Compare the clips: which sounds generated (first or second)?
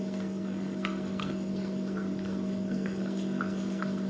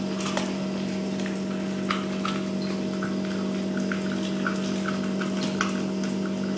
first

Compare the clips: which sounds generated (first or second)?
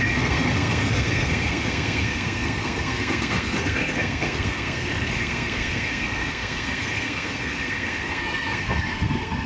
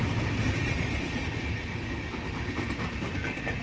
first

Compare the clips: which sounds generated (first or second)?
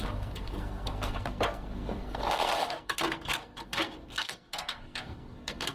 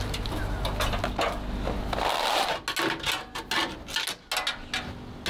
first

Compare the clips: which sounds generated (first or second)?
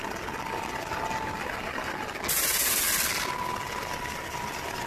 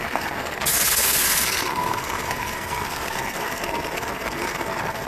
second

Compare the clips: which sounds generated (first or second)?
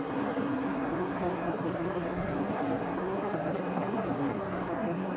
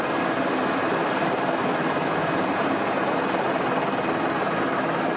first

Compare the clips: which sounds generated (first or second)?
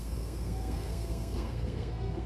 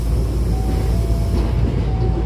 first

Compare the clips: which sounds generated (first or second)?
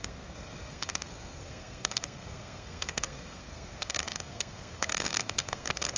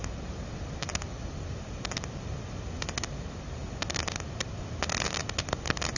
first